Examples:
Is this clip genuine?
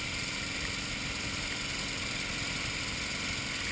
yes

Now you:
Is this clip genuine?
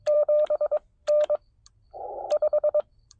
no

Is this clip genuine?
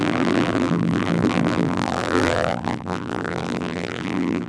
no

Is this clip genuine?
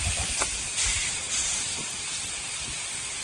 yes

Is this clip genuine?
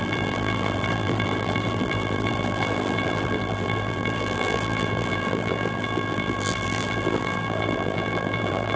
no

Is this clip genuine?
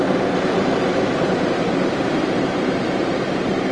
no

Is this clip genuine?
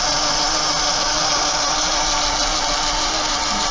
no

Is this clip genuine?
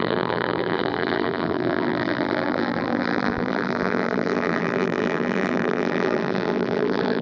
no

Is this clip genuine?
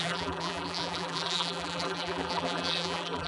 no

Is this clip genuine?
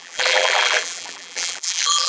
no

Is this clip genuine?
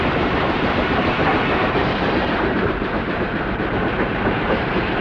no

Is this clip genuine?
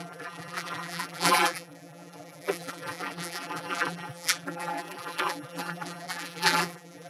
no